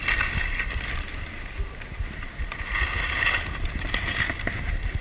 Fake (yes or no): no